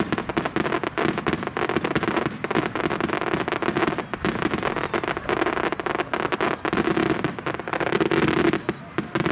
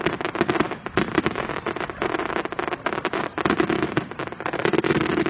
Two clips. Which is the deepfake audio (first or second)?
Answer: second